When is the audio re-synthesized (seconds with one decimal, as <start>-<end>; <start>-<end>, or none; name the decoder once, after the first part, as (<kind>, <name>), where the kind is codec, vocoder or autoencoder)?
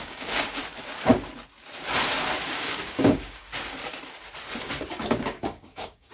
0.0-0.6 (codec, DAC); 2.5-3.5; 4.9-6.1